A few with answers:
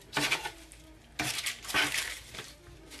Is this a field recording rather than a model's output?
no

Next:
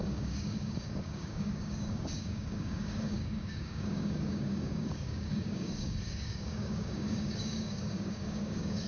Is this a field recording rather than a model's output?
no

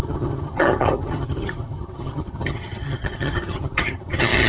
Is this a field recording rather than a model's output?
no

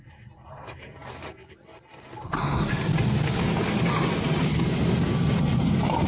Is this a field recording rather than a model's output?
yes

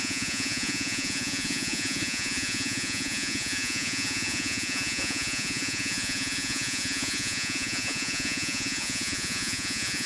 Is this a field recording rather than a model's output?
no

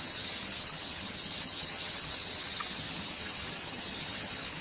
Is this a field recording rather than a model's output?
no